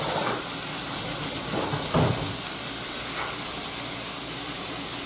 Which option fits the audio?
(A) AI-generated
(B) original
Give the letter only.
B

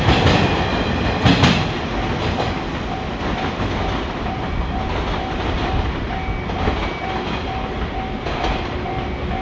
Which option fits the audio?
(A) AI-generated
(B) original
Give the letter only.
B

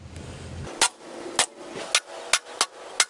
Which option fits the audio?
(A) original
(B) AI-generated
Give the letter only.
A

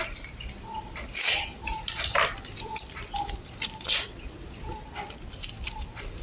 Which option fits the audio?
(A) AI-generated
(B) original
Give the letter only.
B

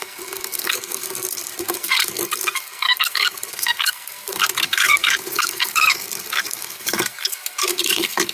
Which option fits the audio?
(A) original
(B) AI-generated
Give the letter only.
B